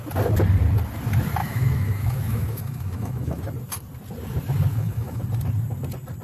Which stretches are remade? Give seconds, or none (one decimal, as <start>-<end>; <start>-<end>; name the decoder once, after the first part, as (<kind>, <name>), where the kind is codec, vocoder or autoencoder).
1.4-3.4 (autoencoder, DAC-VAE); 4.7-5.2